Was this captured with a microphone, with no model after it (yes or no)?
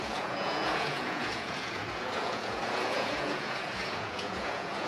no